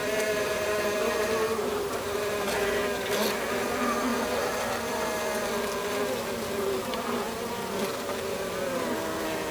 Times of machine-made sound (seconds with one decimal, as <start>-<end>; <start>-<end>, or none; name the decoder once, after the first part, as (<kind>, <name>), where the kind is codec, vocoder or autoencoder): 0.0-2.5 (vocoder, BigVGAN v2)